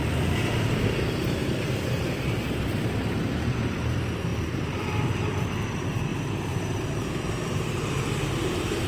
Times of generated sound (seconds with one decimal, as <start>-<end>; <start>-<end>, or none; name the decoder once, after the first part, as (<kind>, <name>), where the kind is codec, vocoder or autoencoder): 0.0-1.4 (vocoder, BigVGAN v2); 2.4-8.9